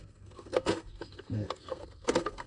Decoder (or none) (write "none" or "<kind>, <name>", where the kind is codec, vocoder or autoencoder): codec, SNAC